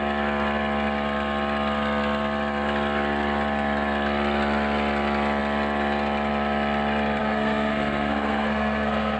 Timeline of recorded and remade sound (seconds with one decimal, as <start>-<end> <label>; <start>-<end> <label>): 0.0-7.2 recorded; 7.2-9.2 remade